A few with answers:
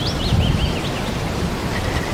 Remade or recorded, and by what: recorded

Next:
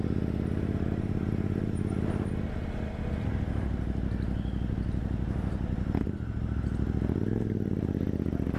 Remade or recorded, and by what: recorded